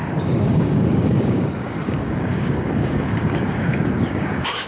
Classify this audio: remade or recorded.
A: remade